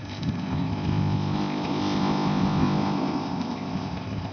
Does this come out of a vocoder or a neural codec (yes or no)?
yes